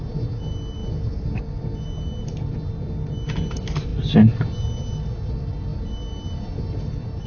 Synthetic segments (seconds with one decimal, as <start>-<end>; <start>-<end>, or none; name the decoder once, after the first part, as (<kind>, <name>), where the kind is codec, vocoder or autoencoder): none